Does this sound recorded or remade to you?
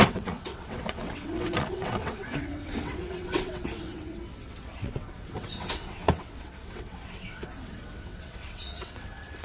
remade